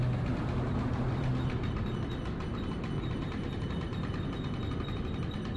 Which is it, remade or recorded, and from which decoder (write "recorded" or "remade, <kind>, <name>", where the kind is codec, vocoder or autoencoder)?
recorded